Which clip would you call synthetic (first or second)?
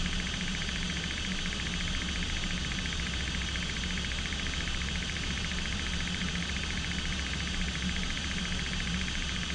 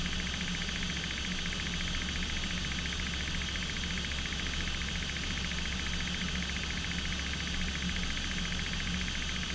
first